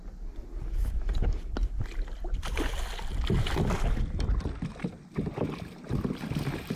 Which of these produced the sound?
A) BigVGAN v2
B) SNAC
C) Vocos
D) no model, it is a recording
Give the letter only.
D